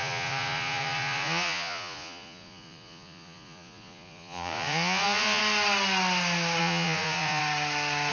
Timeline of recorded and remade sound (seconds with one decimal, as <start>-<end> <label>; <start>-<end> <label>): 0.0-5.4 remade; 5.4-6.6 recorded; 6.6-7.4 remade; 7.4-8.1 recorded